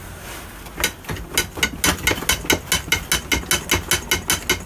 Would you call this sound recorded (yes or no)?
yes